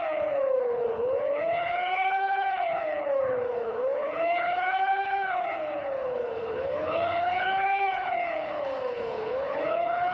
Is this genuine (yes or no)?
no